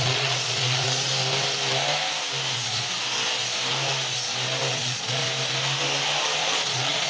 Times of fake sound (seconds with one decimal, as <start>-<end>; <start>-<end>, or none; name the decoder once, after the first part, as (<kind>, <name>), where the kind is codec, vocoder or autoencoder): 0.0-1.1 (vocoder, Vocos); 4.7-5.2; 6.4-7.1